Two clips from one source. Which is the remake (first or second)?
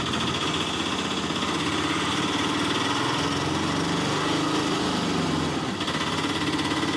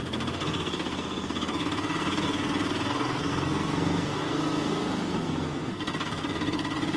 second